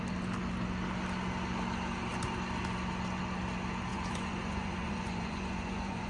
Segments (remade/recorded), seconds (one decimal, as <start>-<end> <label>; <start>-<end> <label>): 0.0-3.9 recorded; 3.9-6.1 remade